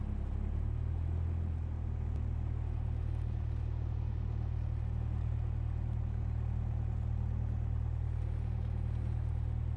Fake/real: real